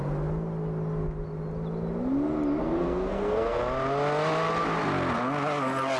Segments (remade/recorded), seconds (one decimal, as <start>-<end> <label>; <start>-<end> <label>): 0.0-2.6 recorded; 2.6-3.6 remade; 3.6-6.0 recorded